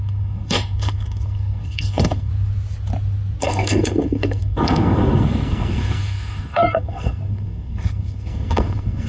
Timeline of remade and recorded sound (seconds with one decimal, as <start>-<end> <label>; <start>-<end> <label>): 0.0-2.3 remade; 2.3-3.4 recorded; 3.4-9.1 remade